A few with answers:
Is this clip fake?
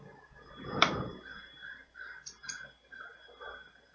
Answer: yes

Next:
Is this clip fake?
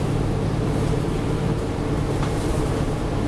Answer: yes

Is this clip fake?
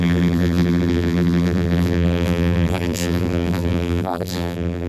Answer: yes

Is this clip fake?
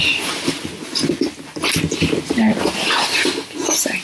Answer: no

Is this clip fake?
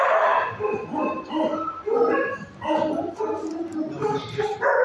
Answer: yes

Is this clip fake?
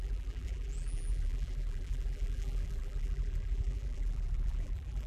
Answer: yes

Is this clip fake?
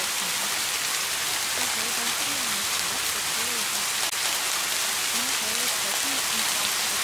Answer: no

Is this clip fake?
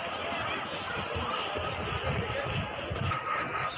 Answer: no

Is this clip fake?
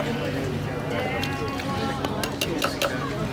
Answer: no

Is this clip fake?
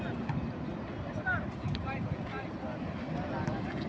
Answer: yes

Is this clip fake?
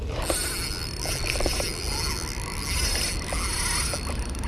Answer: no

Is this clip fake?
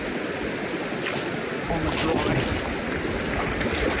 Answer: no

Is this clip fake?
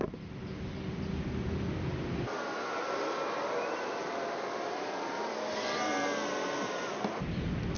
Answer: no